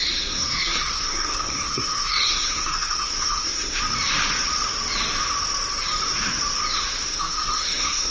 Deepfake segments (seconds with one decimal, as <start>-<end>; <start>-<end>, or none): 0.0-3.8; 7.1-8.1

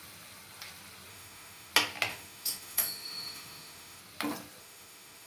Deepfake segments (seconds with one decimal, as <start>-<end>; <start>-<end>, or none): 1.1-1.7; 2.1-4.0; 4.6-5.3

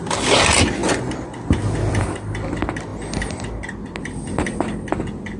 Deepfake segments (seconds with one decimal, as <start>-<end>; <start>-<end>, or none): none

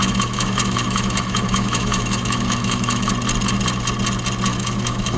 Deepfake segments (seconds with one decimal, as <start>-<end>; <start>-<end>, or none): 0.0-3.1; 4.5-5.2

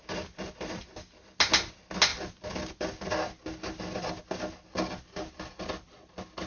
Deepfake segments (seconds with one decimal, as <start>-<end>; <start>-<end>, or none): 0.0-0.8; 2.1-3.0

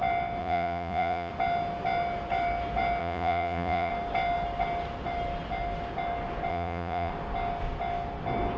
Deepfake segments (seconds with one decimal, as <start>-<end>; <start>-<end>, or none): 0.4-1.3; 3.0-3.9; 6.5-7.1

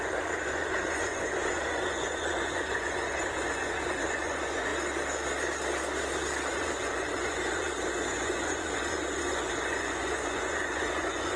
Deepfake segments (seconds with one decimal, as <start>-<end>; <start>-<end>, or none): 0.0-4.7; 6.5-11.4

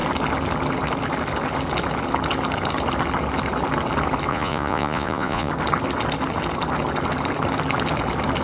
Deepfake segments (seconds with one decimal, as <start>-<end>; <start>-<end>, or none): 4.3-5.5